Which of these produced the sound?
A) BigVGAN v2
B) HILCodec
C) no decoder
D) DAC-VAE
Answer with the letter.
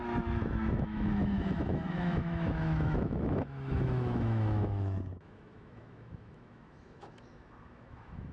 D